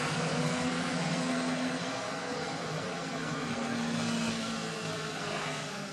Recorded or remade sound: remade